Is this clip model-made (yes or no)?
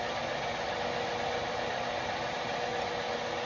no